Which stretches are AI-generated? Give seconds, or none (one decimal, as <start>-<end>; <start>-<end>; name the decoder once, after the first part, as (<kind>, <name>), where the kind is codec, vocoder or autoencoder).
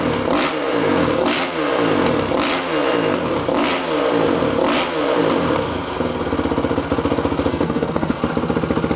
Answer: 7.5-8.2 (codec, SNAC)